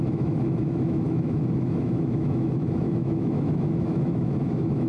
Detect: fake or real fake